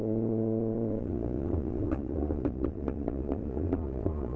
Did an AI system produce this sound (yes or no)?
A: yes